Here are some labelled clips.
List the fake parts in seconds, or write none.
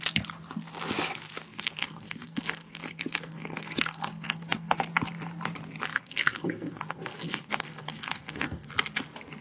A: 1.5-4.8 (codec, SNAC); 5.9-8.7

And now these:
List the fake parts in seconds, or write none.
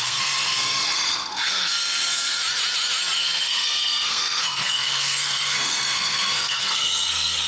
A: 0.0-2.4 (codec, SNAC); 3.2-7.5